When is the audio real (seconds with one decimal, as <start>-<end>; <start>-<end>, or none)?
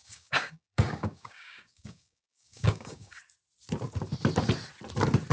3.2-5.3